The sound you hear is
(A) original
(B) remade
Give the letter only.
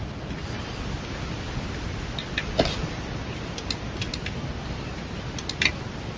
A